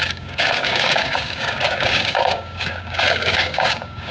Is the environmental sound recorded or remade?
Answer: remade